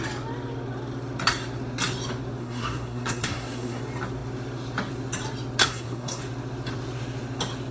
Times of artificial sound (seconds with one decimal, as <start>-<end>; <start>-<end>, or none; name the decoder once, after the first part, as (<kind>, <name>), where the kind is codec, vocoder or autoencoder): 2.4-3.8 (codec, SNAC); 5.6-6.2